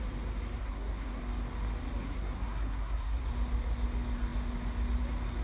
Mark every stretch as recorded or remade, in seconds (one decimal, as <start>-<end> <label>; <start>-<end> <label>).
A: 0.0-0.6 recorded; 0.6-1.2 remade; 1.2-2.0 recorded; 2.0-3.3 remade; 3.3-5.4 recorded